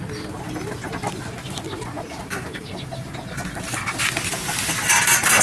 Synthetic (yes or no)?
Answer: no